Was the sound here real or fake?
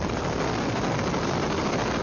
real